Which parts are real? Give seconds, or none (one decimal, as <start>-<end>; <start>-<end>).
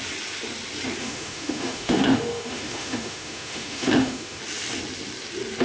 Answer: 0.0-1.0; 4.4-5.6